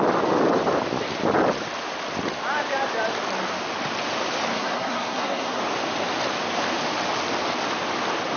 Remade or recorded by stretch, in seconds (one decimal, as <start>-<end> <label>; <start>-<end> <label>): 0.0-4.5 recorded; 4.5-5.6 remade; 5.6-8.4 recorded